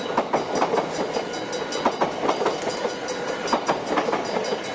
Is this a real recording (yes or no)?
yes